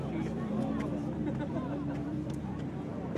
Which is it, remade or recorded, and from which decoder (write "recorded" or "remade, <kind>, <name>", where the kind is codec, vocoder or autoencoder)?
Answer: remade, vocoder, BigVGAN v2